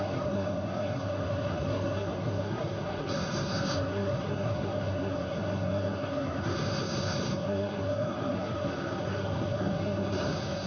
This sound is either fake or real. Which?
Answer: fake